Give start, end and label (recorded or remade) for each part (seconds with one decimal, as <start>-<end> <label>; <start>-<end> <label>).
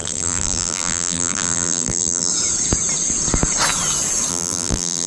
0.0-2.3 remade; 2.3-4.3 recorded; 4.3-5.1 remade